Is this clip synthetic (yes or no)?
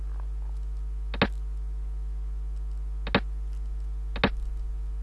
no